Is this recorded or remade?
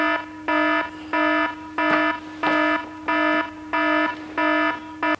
recorded